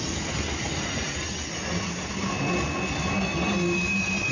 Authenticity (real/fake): real